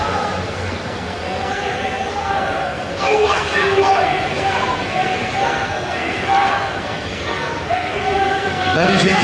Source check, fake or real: fake